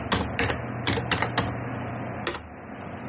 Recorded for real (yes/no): yes